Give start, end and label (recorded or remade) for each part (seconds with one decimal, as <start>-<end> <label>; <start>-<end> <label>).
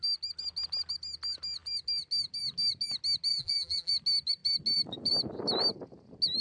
0.0-3.3 recorded; 3.3-3.9 remade; 3.9-6.4 recorded